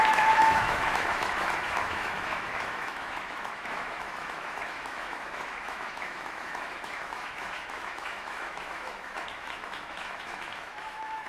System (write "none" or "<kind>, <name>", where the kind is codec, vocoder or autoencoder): autoencoder, DAC-VAE